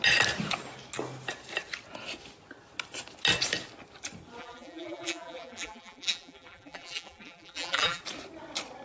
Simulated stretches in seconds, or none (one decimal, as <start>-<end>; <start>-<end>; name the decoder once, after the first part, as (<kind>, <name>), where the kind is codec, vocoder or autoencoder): 4.4-8.0 (vocoder, BigVGAN v2)